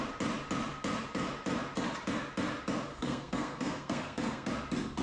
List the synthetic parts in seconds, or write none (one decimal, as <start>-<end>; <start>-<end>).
2.9-4.5